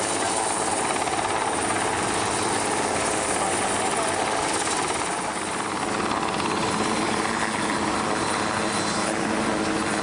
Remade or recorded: recorded